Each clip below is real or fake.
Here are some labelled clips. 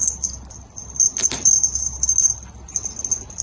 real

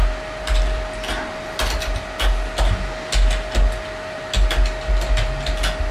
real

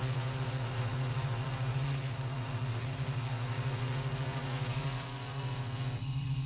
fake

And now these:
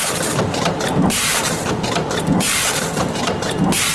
fake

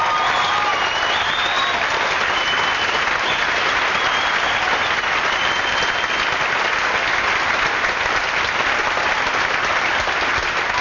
real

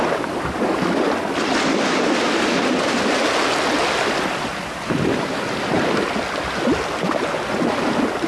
real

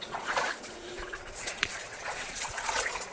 fake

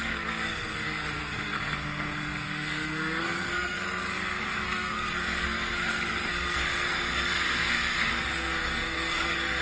fake